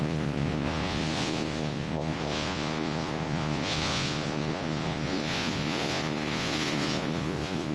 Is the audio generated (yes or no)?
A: yes